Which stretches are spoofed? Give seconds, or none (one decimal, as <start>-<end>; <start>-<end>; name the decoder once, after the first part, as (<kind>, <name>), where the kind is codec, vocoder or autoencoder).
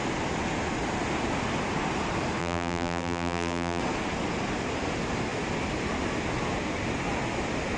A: 2.4-3.8 (vocoder, BigVGAN v2)